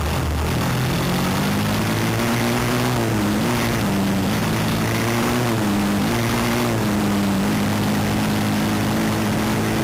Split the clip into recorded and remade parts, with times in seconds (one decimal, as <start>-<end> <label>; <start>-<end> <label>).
0.0-4.4 recorded; 4.4-7.0 remade; 7.0-9.8 recorded